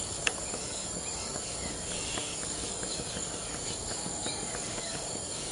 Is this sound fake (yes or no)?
yes